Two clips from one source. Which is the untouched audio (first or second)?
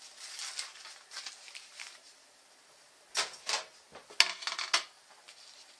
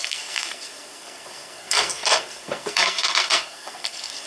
first